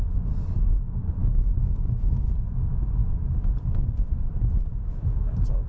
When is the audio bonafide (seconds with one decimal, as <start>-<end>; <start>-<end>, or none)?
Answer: 0.0-1.2; 2.3-5.7